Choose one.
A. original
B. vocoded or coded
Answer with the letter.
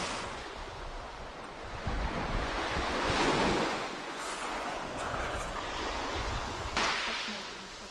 B